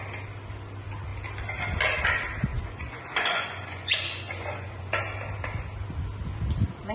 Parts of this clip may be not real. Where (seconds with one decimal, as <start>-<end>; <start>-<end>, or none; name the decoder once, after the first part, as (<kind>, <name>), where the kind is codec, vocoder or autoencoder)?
2.5-4.9 (vocoder, Vocos)